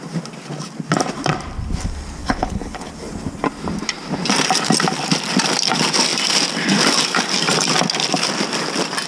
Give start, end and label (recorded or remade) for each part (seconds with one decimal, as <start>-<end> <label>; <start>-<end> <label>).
0.0-2.2 recorded; 2.2-2.9 remade; 2.9-9.1 recorded